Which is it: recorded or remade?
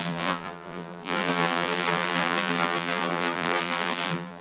remade